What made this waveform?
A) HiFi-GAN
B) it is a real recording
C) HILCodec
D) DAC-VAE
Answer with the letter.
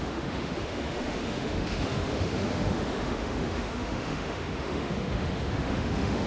D